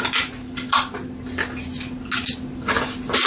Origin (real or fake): real